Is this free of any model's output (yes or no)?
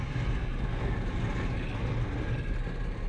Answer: yes